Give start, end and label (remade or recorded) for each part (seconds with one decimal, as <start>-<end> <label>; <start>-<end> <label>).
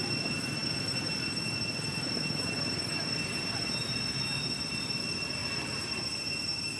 0.0-6.8 recorded